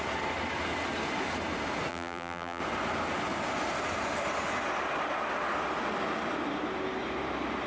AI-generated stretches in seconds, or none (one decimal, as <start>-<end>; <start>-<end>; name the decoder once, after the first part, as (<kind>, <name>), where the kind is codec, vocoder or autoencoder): 1.9-2.6 (vocoder, BigVGAN v2)